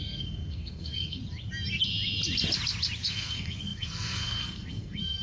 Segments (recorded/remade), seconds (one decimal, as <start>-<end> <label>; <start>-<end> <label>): 0.0-1.2 remade; 1.2-3.1 recorded; 3.1-5.2 remade

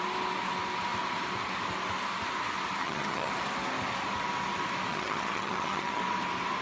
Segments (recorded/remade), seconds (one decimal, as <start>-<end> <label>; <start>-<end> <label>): 0.0-2.8 recorded; 2.8-3.3 remade; 3.3-4.9 recorded; 4.9-6.0 remade; 6.0-6.6 recorded

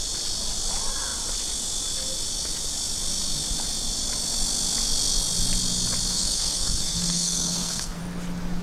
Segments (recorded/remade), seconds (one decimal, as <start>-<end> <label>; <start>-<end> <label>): 0.0-6.1 recorded; 6.1-8.0 remade; 8.0-8.6 recorded